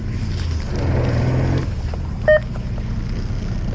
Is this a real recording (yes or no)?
yes